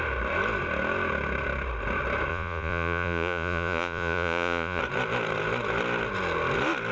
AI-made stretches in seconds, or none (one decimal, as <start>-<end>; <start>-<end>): 2.3-4.8